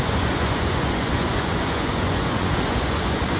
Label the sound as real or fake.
fake